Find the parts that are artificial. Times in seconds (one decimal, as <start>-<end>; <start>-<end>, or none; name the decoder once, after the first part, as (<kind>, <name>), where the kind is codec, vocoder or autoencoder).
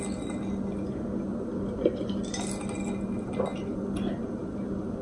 none